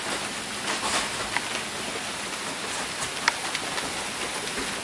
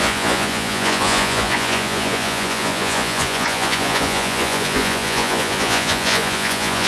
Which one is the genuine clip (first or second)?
first